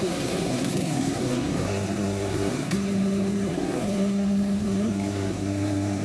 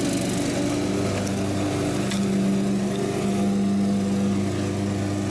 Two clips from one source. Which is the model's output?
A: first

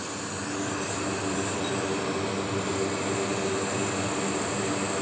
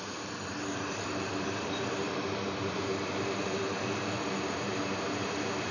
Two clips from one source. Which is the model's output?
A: second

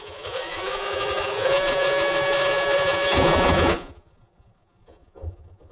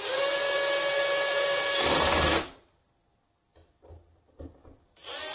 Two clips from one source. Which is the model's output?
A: first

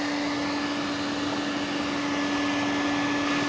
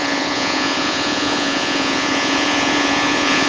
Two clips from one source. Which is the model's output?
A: second